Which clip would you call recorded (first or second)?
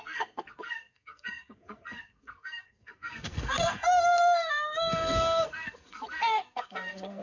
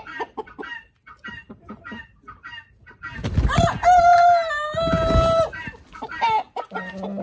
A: second